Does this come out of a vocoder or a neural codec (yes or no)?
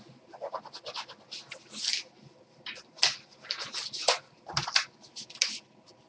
no